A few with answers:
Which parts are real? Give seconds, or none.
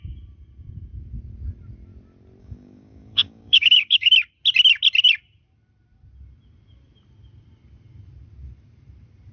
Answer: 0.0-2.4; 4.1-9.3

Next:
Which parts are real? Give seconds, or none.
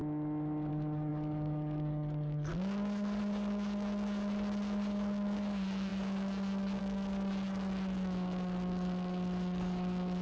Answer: 0.0-0.7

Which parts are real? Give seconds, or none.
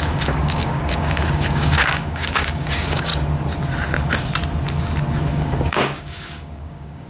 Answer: 3.1-5.3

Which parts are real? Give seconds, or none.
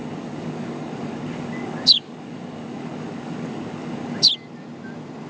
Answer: 4.3-5.3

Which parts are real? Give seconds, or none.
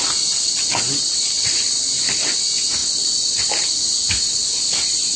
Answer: 0.0-5.2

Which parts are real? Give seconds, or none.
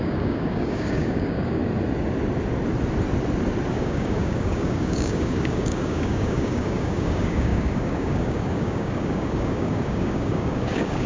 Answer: 1.6-3.7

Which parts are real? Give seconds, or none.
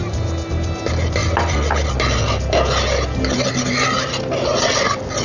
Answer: 0.0-5.2